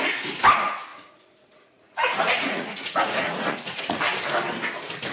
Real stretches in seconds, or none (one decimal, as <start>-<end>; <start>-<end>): 0.0-0.9; 4.0-5.1